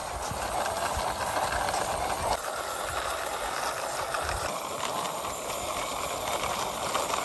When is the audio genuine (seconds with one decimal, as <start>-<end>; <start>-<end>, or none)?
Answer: 0.0-7.2